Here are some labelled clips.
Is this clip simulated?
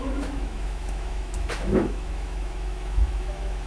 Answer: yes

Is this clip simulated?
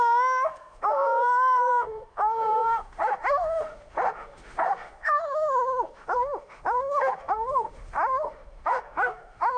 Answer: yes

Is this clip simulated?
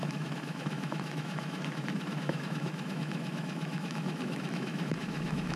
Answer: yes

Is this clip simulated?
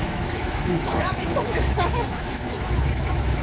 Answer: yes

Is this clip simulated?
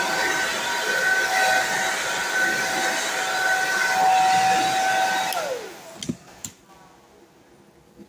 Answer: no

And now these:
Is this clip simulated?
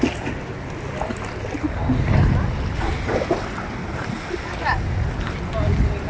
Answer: no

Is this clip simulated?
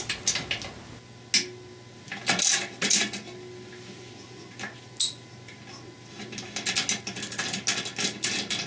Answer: no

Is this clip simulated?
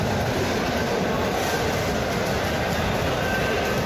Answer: no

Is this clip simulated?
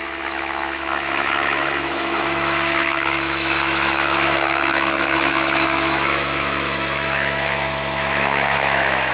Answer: yes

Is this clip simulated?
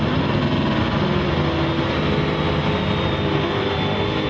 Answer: no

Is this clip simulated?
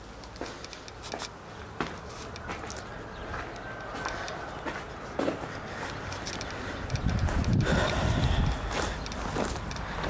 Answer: no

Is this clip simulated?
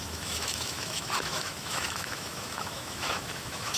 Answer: yes